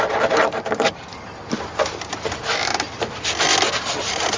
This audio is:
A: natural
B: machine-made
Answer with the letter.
A